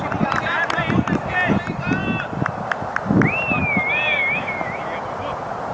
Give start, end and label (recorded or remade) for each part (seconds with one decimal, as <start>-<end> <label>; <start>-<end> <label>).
0.0-5.7 recorded